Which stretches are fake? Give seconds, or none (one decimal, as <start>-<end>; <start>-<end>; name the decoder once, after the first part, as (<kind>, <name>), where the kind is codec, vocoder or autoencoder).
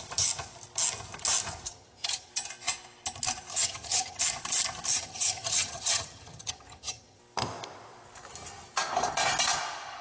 1.7-2.3 (vocoder, HiFi-GAN); 3.5-4.2; 4.9-7.2